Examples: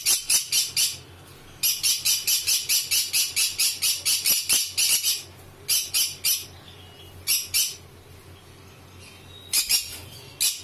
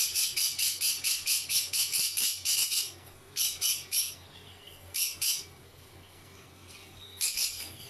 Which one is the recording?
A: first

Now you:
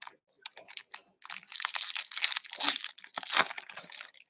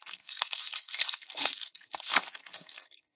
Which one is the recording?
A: first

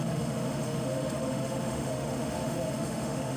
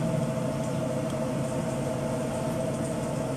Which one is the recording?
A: second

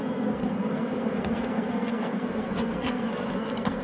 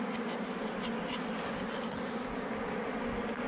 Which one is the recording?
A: second